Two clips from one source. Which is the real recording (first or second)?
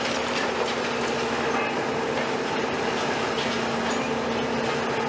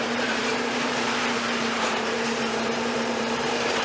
first